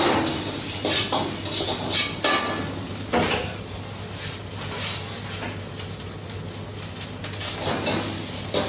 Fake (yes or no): no